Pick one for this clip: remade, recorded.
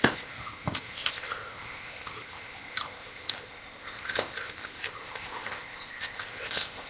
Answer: remade